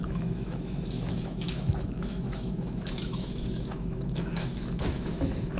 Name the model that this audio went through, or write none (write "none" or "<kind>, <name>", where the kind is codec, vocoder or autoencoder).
autoencoder, DAC-VAE